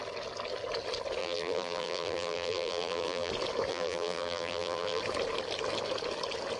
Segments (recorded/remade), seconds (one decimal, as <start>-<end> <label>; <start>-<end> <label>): 0.0-1.2 recorded; 1.2-3.3 remade; 3.3-3.7 recorded; 3.7-5.0 remade; 5.0-6.6 recorded